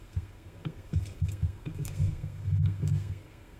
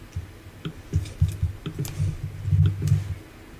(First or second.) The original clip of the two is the second